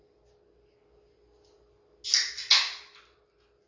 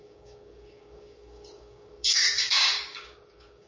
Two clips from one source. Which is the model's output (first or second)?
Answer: second